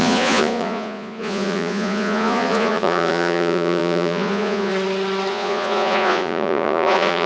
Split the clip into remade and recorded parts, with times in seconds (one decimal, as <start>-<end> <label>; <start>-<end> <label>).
0.0-4.7 remade; 4.7-5.3 recorded; 5.3-7.3 remade